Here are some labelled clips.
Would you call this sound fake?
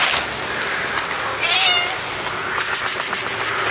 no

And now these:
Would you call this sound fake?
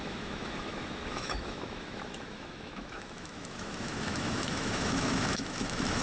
yes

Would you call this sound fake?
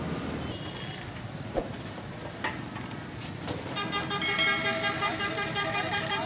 no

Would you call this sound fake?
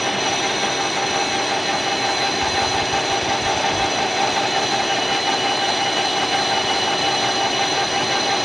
no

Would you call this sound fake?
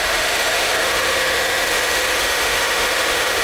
yes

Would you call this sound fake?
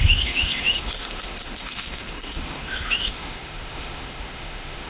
yes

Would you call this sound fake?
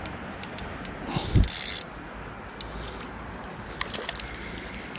no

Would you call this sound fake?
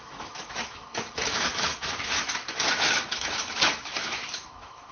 yes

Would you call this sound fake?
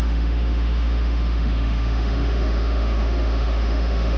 yes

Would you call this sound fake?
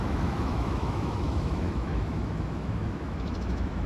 yes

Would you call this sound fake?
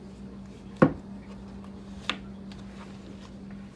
no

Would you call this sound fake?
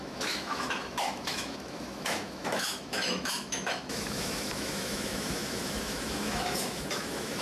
yes